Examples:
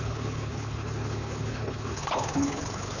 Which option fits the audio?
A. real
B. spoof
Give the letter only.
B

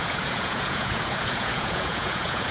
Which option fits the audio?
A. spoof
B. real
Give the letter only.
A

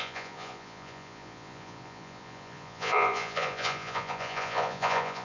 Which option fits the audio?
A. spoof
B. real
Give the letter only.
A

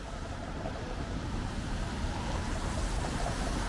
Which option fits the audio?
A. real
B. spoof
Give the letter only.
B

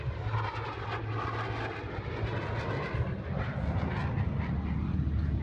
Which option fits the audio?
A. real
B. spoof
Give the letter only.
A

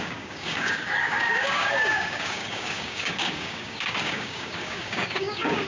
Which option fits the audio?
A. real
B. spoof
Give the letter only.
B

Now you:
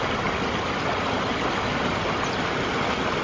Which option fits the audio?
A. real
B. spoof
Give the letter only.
A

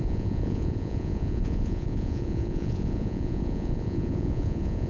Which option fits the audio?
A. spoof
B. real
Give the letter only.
A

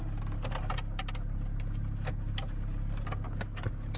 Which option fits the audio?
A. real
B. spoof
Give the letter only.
A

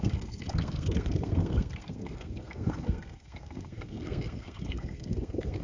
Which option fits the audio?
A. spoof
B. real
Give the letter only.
A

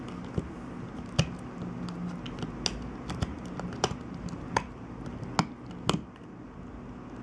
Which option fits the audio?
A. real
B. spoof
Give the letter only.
A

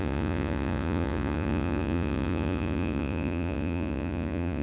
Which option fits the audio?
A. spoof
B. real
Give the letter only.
A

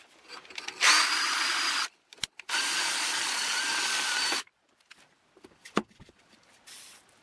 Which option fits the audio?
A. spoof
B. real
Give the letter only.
B